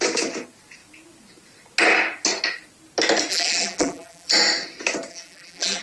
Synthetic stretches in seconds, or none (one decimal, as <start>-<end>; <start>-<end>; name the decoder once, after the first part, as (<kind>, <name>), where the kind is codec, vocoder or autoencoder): 3.3-4.3 (vocoder, BigVGAN v2); 5.1-5.8